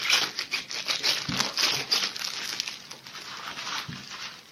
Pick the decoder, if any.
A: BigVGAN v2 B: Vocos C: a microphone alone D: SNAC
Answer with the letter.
C